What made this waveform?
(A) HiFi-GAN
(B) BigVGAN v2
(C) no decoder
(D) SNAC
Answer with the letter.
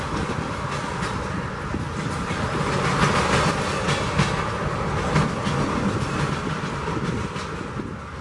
C